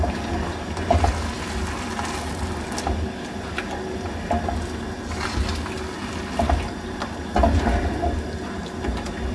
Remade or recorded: recorded